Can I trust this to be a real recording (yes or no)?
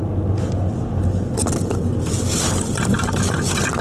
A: yes